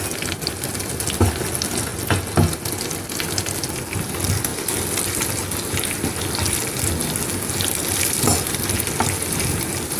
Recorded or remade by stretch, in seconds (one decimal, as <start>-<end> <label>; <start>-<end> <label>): 0.0-10.0 recorded